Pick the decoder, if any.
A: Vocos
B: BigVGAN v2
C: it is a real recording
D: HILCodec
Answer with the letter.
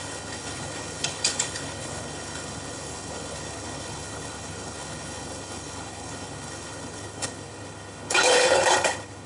D